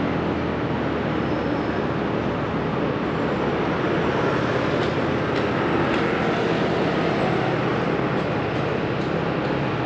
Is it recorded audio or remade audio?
recorded